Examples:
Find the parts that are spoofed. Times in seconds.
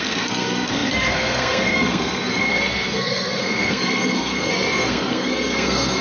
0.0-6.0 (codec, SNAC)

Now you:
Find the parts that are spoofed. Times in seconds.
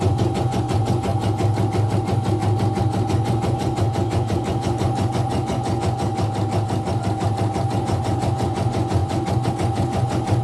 0.0-1.1 (vocoder, Vocos); 3.1-6.1; 7.7-10.4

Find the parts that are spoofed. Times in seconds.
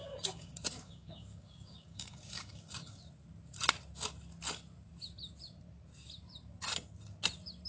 0.0-3.0 (codec, DAC)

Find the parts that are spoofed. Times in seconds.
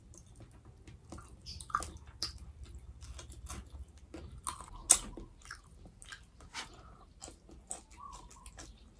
none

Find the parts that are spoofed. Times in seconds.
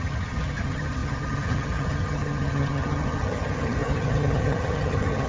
0.0-5.3 (vocoder, HiFi-GAN)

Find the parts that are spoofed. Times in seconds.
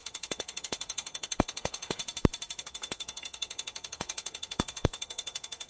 0.0-2.0 (codec, SNAC); 2.6-5.7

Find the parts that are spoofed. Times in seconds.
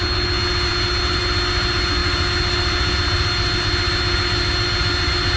none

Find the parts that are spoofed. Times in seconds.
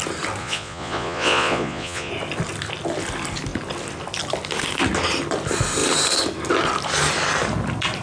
0.4-2.1 (vocoder, Vocos)